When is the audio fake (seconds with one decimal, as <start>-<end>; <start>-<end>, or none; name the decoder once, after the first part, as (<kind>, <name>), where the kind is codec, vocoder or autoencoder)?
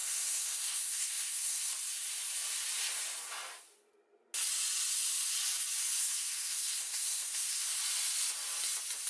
0.0-1.7 (codec, SNAC); 6.0-7.8